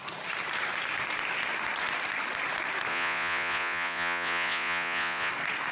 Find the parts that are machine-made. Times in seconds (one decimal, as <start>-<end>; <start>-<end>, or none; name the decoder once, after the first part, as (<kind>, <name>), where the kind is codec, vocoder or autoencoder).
2.9-5.3 (vocoder, Vocos)